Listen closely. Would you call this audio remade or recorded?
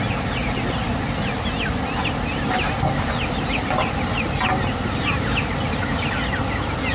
recorded